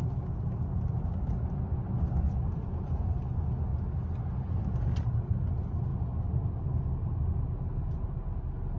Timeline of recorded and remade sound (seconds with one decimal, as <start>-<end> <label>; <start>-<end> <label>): 0.0-8.8 recorded